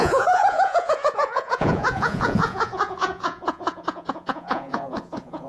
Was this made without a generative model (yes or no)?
no